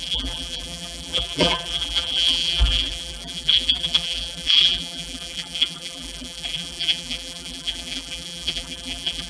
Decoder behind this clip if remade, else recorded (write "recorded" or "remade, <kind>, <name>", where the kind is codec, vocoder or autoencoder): remade, vocoder, BigVGAN v2